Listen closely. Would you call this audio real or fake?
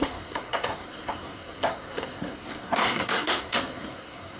fake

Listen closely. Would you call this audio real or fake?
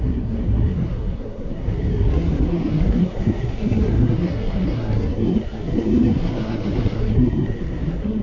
fake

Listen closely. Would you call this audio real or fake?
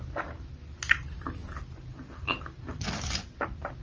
real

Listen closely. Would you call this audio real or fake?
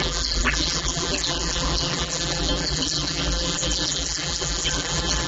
fake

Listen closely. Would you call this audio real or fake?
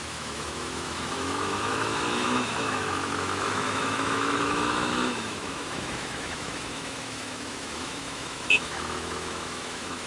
fake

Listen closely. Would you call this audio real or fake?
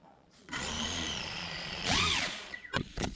fake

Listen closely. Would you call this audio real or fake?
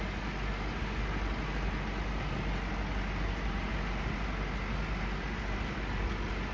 real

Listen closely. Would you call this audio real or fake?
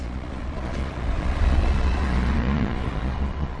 fake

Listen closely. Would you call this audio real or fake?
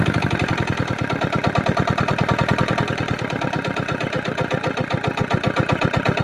real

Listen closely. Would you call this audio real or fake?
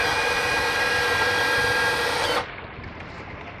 real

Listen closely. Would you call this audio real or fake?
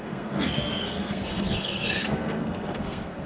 fake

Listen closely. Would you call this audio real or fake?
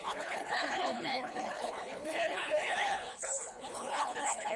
fake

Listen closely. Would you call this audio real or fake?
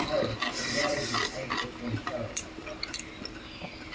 real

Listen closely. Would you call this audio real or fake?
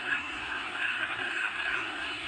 fake